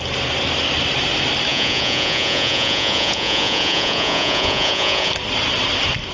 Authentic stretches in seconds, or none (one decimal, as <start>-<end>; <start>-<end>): 0.0-1.5; 5.1-6.1